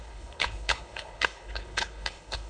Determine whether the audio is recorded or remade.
remade